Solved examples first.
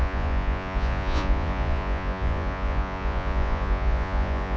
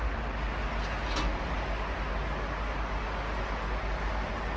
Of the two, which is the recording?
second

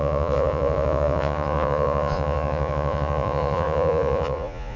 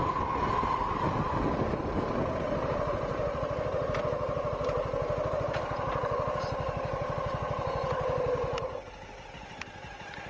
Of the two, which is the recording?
second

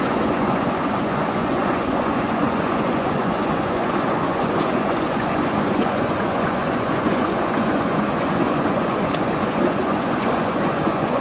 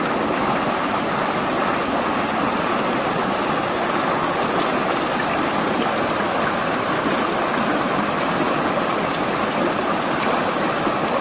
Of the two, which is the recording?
second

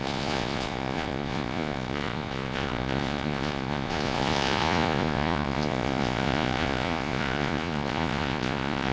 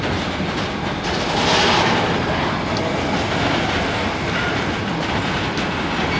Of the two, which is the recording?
second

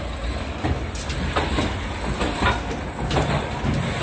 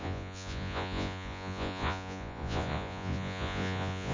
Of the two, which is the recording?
first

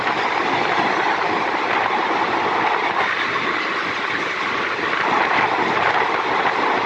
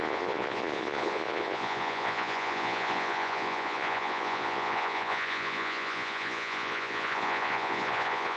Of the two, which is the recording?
first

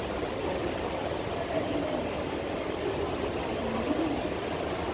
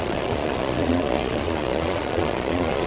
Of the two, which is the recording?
first